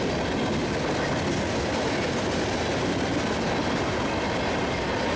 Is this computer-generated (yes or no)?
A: no